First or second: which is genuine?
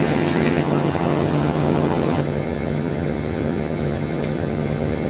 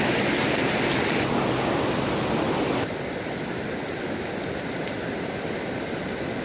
second